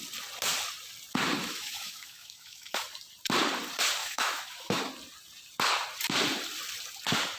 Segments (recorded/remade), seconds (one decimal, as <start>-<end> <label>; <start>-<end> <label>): 0.0-1.4 recorded; 1.4-2.8 remade; 2.8-4.0 recorded; 4.0-4.8 remade; 4.8-7.4 recorded